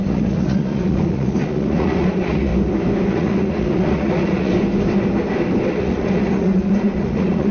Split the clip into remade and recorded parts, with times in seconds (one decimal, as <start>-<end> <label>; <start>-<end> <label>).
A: 0.0-2.5 remade; 2.5-3.1 recorded; 3.1-4.5 remade; 4.5-5.7 recorded; 5.7-7.5 remade